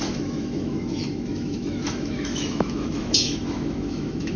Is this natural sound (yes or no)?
no